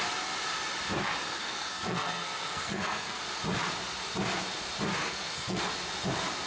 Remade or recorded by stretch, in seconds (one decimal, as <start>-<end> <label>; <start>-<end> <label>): 0.0-1.4 recorded; 1.4-3.2 remade; 3.2-5.0 recorded; 5.0-5.6 remade; 5.6-6.5 recorded